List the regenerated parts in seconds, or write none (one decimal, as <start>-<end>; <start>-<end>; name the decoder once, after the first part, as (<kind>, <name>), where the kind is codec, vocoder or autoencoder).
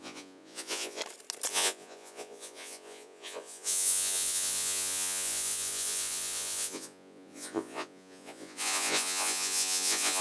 0.0-1.0 (vocoder, Vocos); 1.5-10.2